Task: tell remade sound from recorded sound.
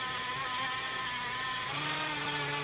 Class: recorded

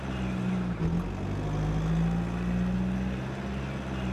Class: recorded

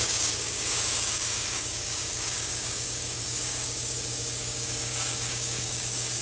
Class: remade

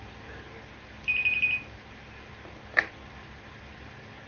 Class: recorded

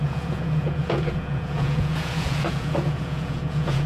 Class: remade